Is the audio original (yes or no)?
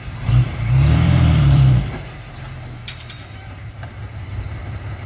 no